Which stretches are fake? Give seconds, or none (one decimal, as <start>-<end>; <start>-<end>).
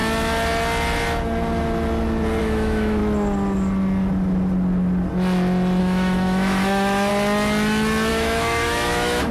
2.4-3.0; 5.8-7.1; 8.1-9.3